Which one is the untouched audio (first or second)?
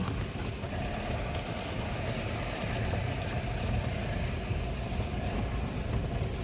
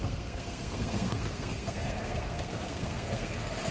first